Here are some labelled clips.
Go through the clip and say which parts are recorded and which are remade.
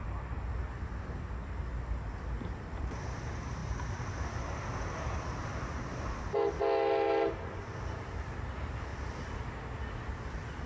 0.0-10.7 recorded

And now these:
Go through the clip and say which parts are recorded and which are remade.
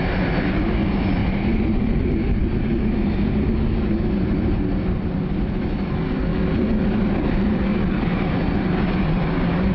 0.0-1.2 recorded; 1.2-1.8 remade; 1.8-9.7 recorded